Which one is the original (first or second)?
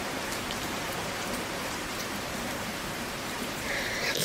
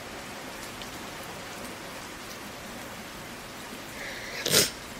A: second